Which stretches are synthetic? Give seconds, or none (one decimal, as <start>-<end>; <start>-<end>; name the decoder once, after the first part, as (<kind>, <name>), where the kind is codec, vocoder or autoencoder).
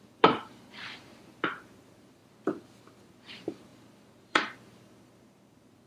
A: 0.0-2.2 (vocoder, BigVGAN v2); 3.0-5.9